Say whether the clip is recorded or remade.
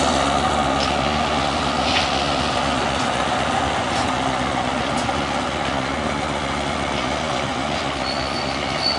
remade